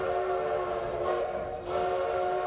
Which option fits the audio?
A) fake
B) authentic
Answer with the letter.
B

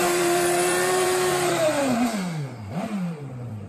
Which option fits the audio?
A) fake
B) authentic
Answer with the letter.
A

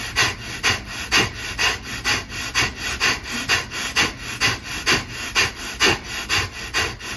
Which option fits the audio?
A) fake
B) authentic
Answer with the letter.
B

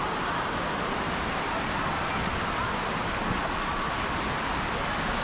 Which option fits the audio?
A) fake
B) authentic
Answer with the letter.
B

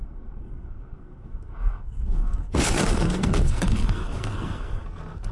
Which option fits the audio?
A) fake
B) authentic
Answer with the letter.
A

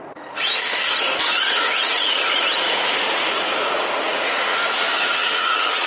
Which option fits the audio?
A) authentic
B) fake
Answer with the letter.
B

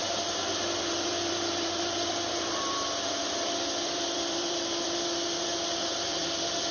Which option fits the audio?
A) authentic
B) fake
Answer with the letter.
B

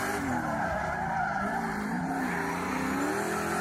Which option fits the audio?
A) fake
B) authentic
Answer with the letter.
B